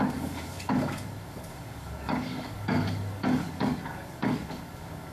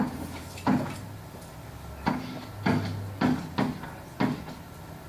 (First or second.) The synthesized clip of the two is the first